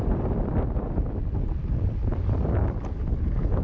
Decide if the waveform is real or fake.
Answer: real